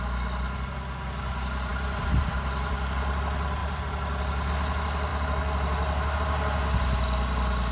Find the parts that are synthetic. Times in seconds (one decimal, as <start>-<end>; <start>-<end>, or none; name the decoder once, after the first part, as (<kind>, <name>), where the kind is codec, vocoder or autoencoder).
3.6-4.5 (vocoder, BigVGAN v2)